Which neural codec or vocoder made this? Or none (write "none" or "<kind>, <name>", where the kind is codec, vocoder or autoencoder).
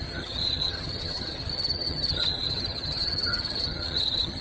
vocoder, HiFi-GAN